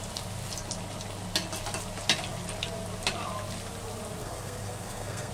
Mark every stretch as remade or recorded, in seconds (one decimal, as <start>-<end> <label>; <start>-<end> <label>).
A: 0.0-4.2 recorded; 4.2-5.3 remade